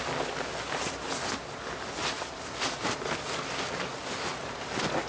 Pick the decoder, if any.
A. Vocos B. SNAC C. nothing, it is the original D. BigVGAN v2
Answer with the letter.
C